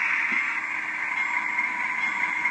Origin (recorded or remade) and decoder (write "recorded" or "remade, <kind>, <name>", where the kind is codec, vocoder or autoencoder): recorded